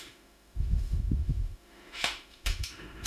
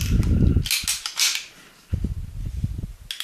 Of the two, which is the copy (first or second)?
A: first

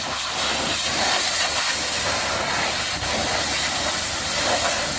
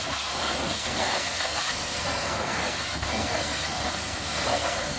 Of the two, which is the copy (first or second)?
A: second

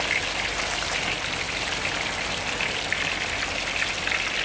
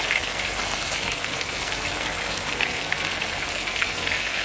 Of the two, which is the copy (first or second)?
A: second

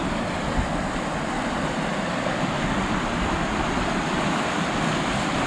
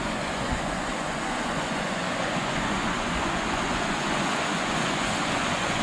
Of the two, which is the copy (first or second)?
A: second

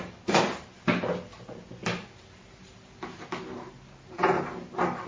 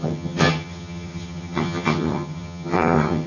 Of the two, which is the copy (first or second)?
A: second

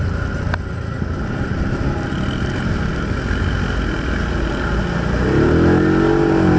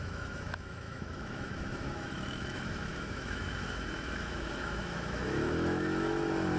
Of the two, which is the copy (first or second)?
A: second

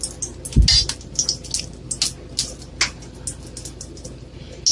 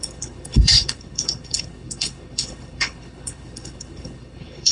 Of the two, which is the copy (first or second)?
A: second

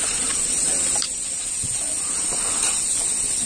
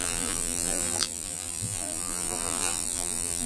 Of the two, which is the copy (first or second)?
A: second